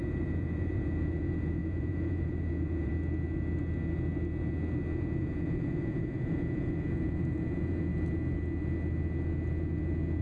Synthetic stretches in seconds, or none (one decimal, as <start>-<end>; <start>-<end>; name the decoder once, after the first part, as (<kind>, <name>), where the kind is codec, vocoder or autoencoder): 0.0-2.9 (vocoder, Vocos); 5.2-7.9